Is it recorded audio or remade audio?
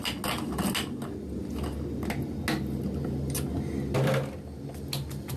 recorded